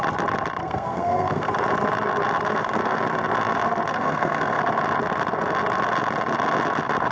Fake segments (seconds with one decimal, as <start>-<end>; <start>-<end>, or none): 0.6-1.5; 3.9-4.6